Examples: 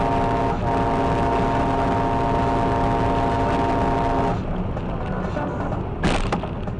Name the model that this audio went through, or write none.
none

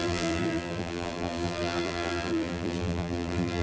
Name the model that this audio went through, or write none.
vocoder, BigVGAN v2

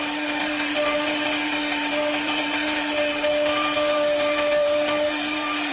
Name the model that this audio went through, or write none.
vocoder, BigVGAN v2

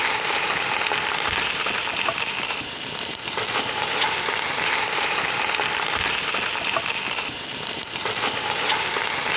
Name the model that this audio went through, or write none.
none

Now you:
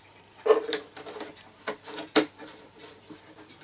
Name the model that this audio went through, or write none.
none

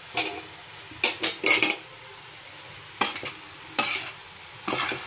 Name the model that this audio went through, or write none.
none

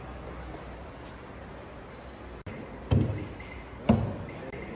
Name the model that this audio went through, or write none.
none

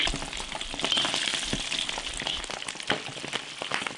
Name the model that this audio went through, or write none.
none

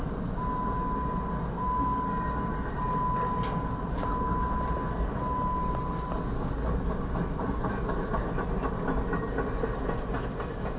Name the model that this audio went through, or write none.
none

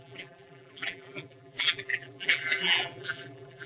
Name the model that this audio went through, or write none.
vocoder, BigVGAN v2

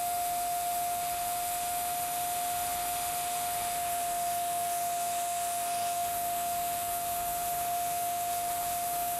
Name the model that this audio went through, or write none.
autoencoder, DAC-VAE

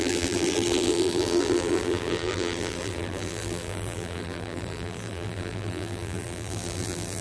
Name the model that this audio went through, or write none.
vocoder, BigVGAN v2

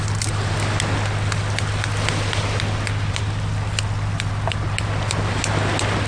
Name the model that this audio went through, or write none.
none